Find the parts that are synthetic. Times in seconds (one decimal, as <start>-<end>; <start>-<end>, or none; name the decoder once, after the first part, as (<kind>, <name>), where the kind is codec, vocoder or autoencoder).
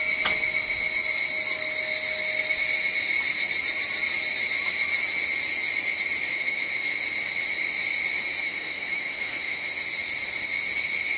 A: 6.3-7.0 (autoencoder, DAC-VAE); 8.4-9.7